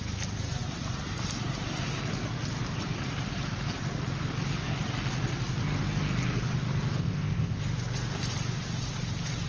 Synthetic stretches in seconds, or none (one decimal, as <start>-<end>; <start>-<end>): 7.0-7.6